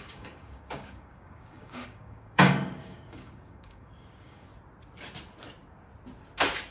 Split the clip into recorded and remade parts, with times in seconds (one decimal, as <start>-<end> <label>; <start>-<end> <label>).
0.0-4.5 remade; 4.5-6.7 recorded